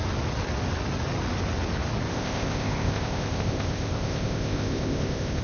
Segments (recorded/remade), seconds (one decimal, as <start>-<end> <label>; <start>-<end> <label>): 0.0-2.1 recorded; 2.1-5.4 remade